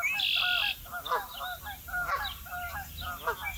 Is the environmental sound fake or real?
real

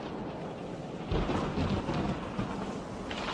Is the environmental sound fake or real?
real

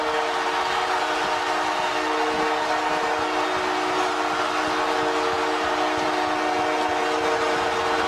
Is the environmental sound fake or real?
real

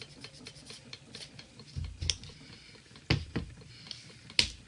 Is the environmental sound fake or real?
real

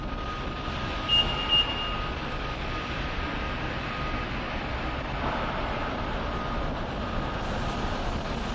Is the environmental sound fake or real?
real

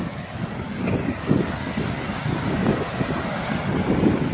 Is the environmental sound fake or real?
real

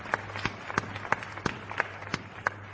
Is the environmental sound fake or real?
real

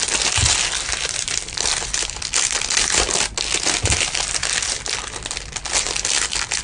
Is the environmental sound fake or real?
real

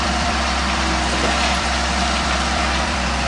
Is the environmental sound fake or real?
fake